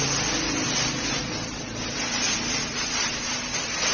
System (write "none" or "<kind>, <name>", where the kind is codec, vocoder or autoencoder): none